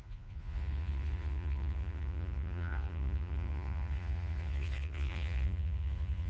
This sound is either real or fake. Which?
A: fake